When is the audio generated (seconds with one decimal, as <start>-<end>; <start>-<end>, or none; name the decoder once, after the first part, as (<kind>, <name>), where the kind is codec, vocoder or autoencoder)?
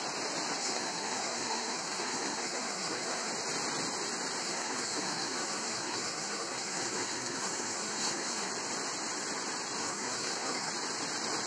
0.6-3.3 (codec, SNAC); 4.4-8.5; 9.8-10.7